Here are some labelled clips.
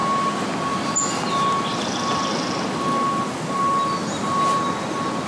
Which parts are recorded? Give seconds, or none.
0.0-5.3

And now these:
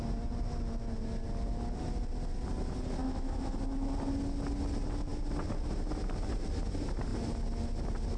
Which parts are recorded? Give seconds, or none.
0.0-3.0; 3.6-8.2

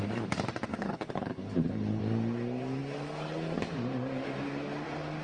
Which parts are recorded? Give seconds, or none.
0.0-0.7; 2.0-5.2

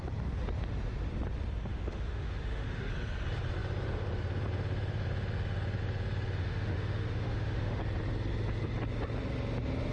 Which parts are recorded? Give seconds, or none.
0.0-1.7; 2.9-6.4; 7.8-9.9

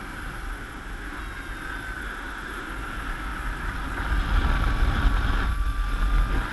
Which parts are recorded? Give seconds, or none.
0.0-0.5; 1.2-2.0; 2.7-6.5

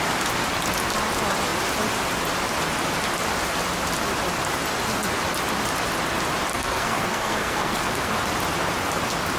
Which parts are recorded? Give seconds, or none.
0.0-6.5; 8.1-9.4

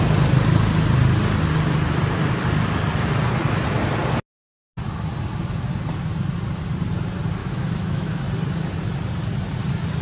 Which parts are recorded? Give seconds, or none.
0.0-7.4; 8.2-10.0

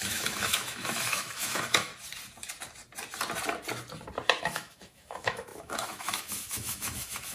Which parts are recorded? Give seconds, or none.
1.9-4.4